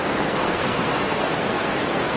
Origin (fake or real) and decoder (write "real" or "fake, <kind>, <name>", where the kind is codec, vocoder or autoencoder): fake, codec, SNAC